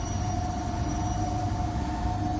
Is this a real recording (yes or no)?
yes